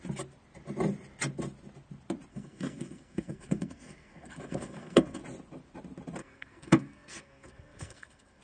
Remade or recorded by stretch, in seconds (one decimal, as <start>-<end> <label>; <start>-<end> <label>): 0.0-2.3 recorded; 2.3-5.2 remade; 5.2-6.2 recorded; 6.2-8.4 remade